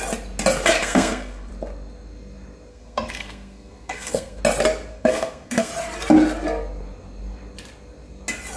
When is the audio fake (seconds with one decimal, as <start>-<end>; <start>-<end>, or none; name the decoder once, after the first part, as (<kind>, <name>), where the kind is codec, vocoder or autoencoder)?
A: 0.8-1.5 (codec, SNAC); 2.7-4.4; 4.9-5.7